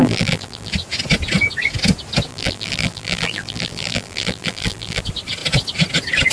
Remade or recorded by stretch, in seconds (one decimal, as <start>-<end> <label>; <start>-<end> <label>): 0.0-0.7 remade; 0.7-2.3 recorded; 2.3-5.0 remade; 5.0-6.3 recorded